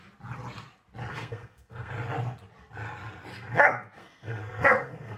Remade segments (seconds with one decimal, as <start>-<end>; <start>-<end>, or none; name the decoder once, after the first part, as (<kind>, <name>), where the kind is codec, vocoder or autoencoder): 1.1-1.9 (codec, SNAC); 3.3-5.2